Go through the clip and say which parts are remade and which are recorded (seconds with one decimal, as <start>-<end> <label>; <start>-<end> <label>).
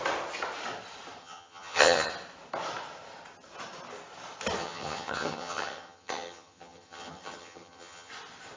0.0-1.2 recorded; 1.2-2.1 remade; 2.1-4.6 recorded; 4.6-8.1 remade; 8.1-8.6 recorded